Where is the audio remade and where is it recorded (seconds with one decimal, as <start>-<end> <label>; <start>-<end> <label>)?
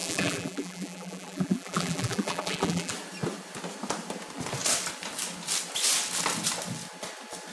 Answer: 0.0-2.9 remade; 2.9-7.5 recorded